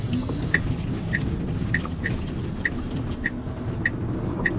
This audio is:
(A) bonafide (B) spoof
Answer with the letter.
A